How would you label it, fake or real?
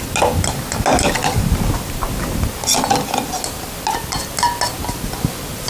real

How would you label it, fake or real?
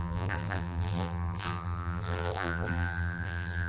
fake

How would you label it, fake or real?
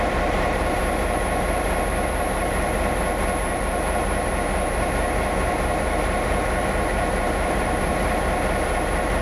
fake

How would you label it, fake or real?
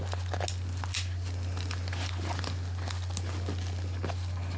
real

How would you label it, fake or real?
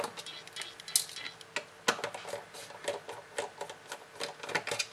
real